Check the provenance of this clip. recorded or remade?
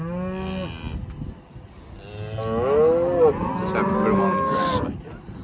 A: recorded